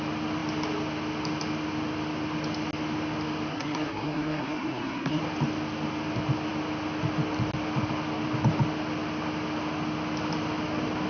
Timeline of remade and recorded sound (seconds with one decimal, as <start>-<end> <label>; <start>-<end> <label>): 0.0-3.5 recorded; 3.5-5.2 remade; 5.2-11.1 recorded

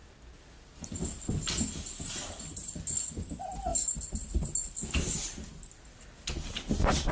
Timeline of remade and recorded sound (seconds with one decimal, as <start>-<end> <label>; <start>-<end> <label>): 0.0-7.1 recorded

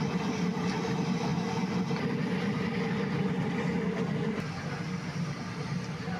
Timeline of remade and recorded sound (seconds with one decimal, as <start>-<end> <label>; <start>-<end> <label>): 0.0-6.2 recorded

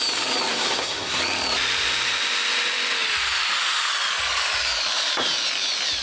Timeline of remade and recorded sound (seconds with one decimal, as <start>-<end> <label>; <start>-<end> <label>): 0.0-0.5 recorded; 0.5-1.2 remade; 1.2-6.0 recorded

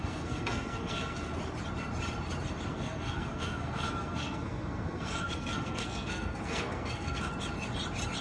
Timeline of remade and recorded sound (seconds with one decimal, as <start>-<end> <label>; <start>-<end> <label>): 0.0-1.4 remade; 1.4-2.7 recorded; 2.7-7.3 remade; 7.3-8.2 recorded

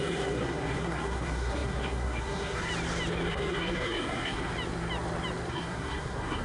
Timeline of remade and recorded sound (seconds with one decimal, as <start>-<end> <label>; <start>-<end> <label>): 0.0-2.7 remade; 2.7-3.3 recorded; 3.3-4.5 remade; 4.5-5.5 recorded; 5.5-6.4 remade

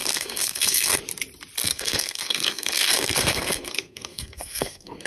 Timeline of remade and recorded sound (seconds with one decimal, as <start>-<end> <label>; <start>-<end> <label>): 0.0-1.0 remade; 1.0-1.6 recorded; 1.6-5.1 remade

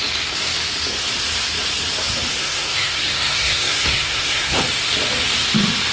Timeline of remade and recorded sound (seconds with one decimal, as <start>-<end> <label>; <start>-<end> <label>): 0.0-2.3 recorded; 2.3-4.6 remade; 4.6-5.9 recorded